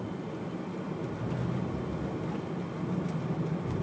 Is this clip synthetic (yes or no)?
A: no